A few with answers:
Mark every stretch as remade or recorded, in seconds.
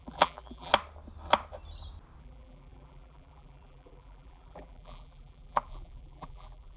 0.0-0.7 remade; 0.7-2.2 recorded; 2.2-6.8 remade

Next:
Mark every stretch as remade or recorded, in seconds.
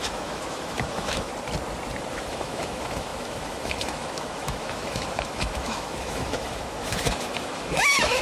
0.0-1.3 remade; 1.3-2.1 recorded; 2.1-8.2 remade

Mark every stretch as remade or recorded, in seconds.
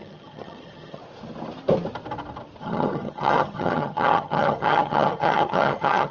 0.0-1.0 remade; 1.0-2.6 recorded; 2.6-6.1 remade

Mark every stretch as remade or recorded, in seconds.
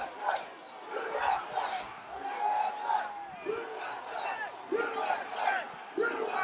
0.0-1.7 recorded; 1.7-2.7 remade; 2.7-6.4 recorded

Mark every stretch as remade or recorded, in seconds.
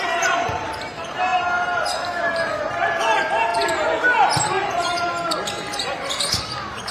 0.0-6.9 remade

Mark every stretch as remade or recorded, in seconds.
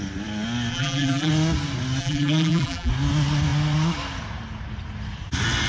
0.0-0.7 recorded; 0.7-1.3 remade; 1.3-2.0 recorded; 2.0-2.9 remade; 2.9-5.7 recorded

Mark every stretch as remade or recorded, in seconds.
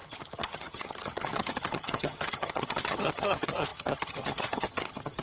0.0-5.2 remade